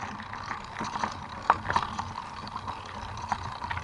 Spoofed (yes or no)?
no